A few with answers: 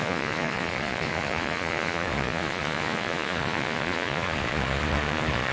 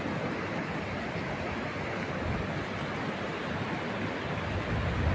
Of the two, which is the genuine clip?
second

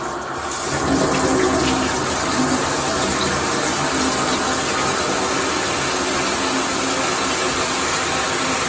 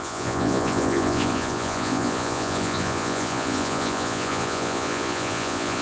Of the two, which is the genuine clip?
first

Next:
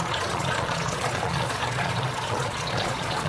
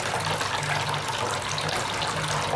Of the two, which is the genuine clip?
second